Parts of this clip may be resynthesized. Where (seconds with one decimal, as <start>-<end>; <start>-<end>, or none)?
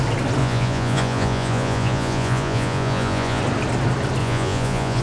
0.4-3.4; 4.2-5.0